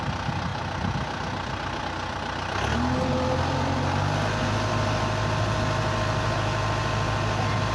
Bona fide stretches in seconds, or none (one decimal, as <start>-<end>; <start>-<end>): 0.0-7.7